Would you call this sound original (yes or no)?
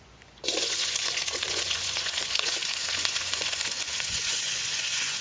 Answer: no